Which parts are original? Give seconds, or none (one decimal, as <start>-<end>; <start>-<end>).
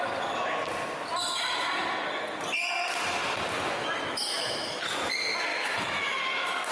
0.0-3.8; 4.9-5.5